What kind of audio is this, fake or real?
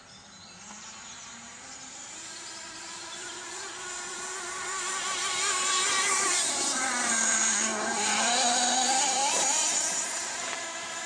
fake